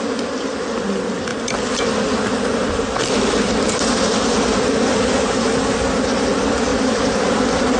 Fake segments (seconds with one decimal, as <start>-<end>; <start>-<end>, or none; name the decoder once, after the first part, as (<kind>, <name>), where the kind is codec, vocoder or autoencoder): 6.7-7.3 (vocoder, BigVGAN v2)